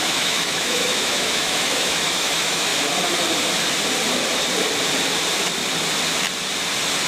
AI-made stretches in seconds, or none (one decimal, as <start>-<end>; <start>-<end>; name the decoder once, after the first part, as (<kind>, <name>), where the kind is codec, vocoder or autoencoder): 0.0-2.7 (autoencoder, DAC-VAE)